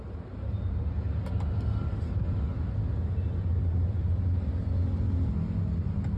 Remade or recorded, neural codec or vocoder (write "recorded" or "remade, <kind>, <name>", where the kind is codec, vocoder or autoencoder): recorded